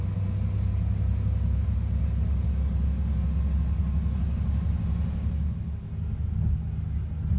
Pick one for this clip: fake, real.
real